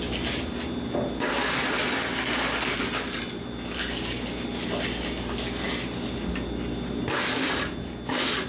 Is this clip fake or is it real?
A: real